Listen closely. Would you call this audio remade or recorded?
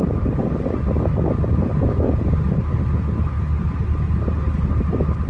recorded